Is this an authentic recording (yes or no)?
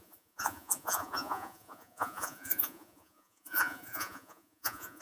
no